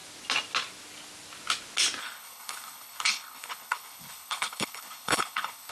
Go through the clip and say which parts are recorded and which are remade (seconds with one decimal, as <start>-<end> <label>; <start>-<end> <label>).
0.0-2.0 recorded; 2.0-5.7 remade